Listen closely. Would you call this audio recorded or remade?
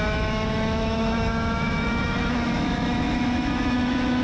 remade